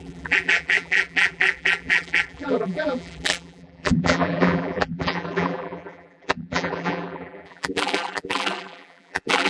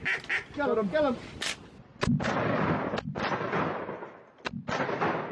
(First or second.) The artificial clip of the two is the first